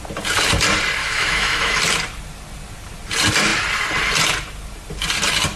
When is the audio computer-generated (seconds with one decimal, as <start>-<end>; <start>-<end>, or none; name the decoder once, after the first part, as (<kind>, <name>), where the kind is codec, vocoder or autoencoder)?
1.0-1.8 (autoencoder, DAC-VAE)